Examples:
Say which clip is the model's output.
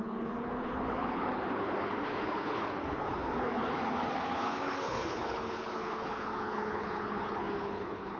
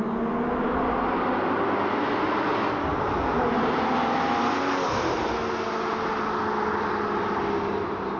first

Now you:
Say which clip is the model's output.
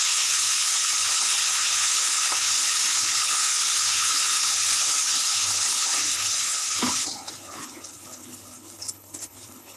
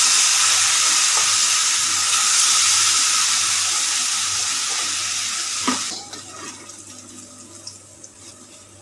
first